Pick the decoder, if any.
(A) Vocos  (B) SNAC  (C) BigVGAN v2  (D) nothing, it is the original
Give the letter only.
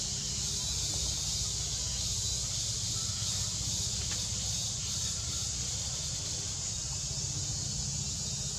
D